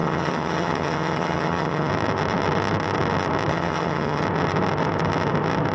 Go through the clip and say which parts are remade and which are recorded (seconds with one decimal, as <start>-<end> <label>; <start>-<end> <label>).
0.0-1.9 remade; 1.9-3.5 recorded; 3.5-4.2 remade; 4.2-5.7 recorded